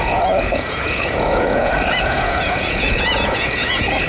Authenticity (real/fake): fake